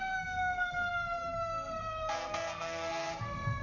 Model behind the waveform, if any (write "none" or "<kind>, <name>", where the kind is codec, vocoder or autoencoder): codec, SNAC